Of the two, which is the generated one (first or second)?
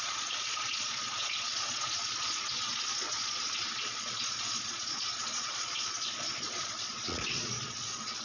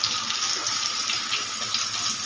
first